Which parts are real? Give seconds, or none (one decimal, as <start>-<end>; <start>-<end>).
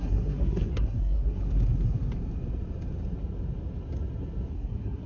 1.4-4.5